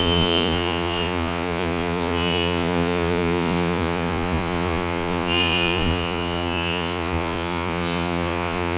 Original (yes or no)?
no